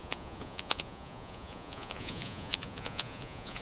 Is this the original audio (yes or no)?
no